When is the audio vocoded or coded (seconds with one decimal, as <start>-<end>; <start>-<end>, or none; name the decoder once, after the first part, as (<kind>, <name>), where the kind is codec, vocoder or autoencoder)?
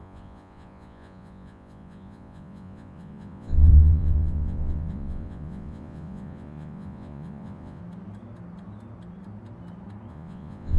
0.0-7.8 (vocoder, Vocos); 10.1-10.8